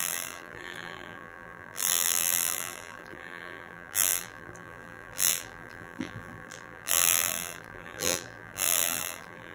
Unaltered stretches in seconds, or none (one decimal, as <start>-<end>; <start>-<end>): none